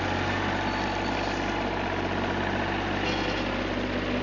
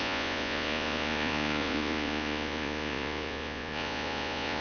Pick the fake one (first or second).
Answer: second